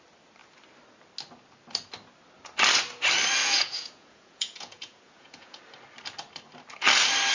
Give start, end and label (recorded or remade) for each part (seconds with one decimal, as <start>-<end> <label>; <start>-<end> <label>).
0.0-3.4 recorded; 3.4-5.6 remade; 5.6-7.3 recorded

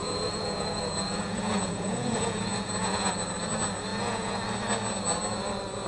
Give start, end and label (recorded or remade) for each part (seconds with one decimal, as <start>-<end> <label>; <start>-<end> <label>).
0.0-3.1 remade; 3.1-3.9 recorded; 3.9-4.4 remade; 4.4-5.9 recorded

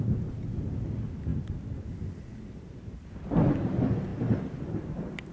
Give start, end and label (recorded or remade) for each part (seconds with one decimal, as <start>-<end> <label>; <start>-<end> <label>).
0.0-1.3 recorded; 1.3-2.9 remade; 2.9-4.1 recorded; 4.1-4.7 remade; 4.7-5.3 recorded

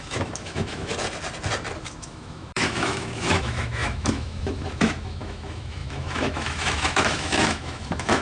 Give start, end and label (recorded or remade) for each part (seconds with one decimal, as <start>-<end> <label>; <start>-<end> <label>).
0.0-0.9 remade; 0.9-1.8 recorded; 1.8-8.2 remade